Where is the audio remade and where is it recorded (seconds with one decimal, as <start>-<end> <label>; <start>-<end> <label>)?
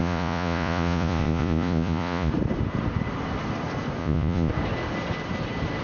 0.0-2.3 remade; 2.3-4.0 recorded; 4.0-4.5 remade; 4.5-5.8 recorded